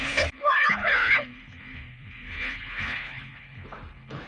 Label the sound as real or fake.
fake